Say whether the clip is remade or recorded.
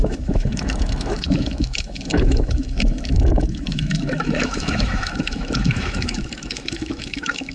remade